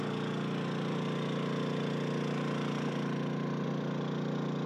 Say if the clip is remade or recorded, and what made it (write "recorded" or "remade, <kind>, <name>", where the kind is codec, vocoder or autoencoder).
recorded